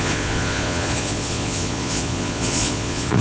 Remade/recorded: remade